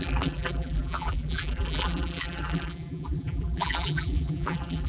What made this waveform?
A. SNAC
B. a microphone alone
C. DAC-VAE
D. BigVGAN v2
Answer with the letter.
D